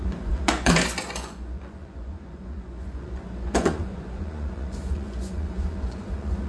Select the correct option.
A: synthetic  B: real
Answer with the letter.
A